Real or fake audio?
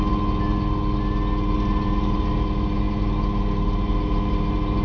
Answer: real